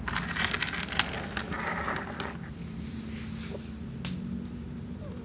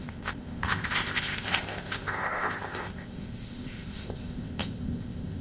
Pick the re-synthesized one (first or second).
second